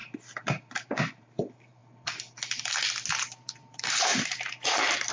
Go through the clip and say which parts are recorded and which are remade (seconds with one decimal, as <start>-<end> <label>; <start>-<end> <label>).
0.0-0.7 recorded; 0.7-1.8 remade; 1.8-3.1 recorded; 3.1-5.1 remade